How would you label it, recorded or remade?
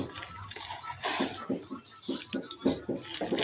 recorded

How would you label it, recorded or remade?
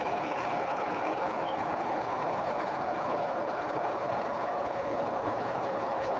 remade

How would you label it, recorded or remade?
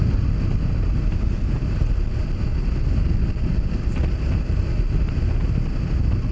recorded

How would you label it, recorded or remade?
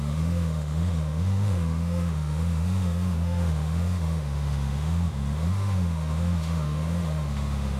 remade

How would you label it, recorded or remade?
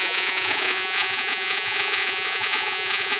remade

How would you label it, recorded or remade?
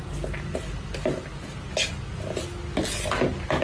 recorded